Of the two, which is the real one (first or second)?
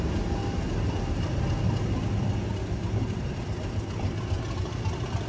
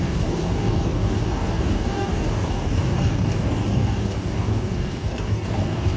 first